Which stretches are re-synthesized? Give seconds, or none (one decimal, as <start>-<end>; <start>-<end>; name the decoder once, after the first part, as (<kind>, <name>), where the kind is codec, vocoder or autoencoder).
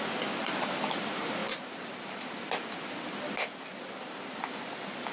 none